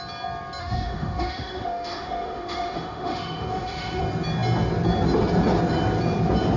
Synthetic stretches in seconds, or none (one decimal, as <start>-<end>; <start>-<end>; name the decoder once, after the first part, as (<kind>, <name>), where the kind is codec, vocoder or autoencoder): 0.6-4.0 (autoencoder, DAC-VAE)